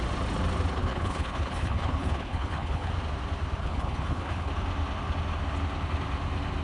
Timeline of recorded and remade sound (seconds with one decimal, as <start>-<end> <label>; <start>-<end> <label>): 0.0-0.8 recorded; 0.8-2.9 remade; 2.9-3.6 recorded; 3.6-4.5 remade; 4.5-6.6 recorded